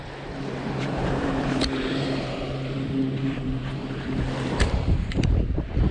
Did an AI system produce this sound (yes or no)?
yes